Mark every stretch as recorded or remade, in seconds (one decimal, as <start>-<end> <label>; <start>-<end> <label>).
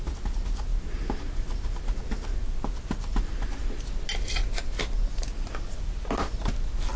0.0-7.0 recorded